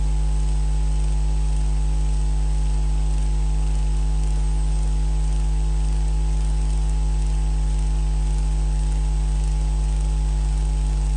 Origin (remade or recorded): recorded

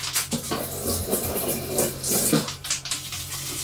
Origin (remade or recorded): recorded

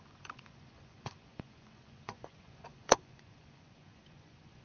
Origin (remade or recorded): remade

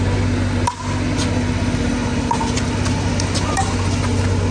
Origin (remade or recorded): recorded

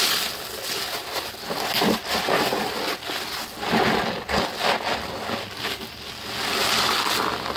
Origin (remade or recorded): recorded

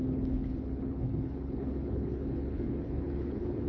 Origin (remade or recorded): remade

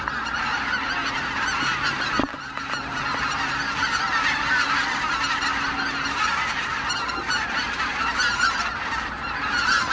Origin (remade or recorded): recorded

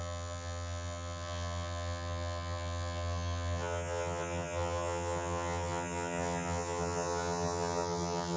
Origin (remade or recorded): remade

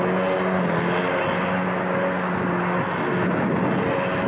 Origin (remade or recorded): recorded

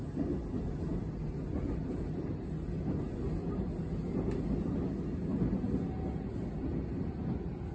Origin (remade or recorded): recorded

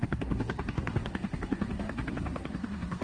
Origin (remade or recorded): remade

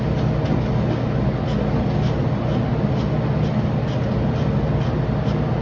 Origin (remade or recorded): recorded